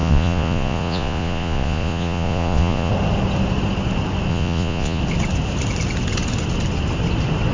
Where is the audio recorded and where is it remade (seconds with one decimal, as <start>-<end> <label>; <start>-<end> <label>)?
0.0-2.9 remade; 2.9-4.3 recorded; 4.3-5.0 remade; 5.0-7.5 recorded